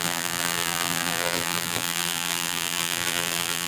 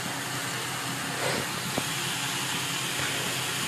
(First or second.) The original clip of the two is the second